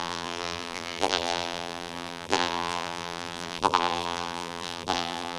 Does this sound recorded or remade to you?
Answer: remade